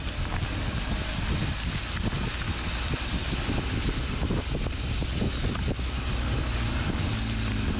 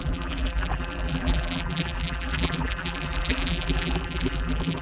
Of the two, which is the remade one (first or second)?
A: second